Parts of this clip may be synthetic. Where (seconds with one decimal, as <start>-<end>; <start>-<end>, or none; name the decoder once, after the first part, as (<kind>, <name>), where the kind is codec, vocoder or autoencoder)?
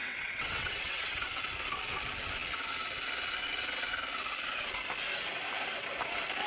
0.0-1.4 (vocoder, WaveNeXt)